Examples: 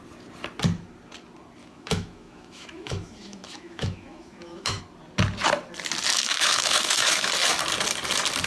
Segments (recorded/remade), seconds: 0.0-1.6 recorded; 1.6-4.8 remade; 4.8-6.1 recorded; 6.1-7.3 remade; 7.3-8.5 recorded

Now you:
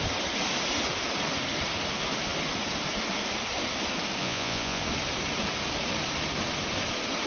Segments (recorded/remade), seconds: 0.0-4.2 recorded; 4.2-4.8 remade; 4.8-7.3 recorded

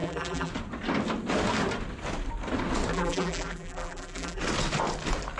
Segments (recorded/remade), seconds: 0.0-0.5 remade; 0.5-2.9 recorded; 2.9-4.4 remade; 4.4-5.4 recorded